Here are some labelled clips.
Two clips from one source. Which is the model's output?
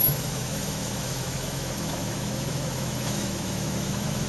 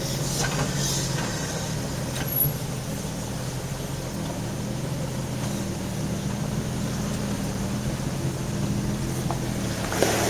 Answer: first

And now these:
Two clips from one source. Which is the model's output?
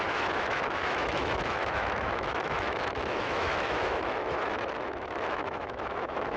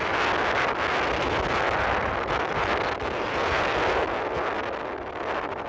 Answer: first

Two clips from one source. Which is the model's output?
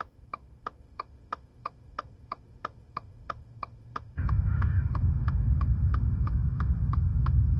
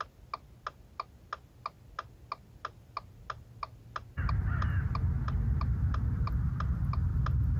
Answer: first